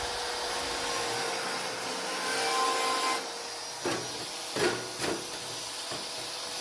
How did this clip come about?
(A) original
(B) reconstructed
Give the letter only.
A